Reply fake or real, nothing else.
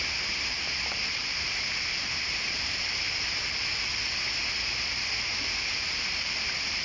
fake